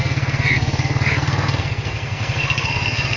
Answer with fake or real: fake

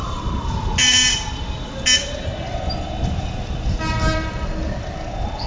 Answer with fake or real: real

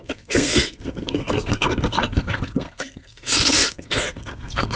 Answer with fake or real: fake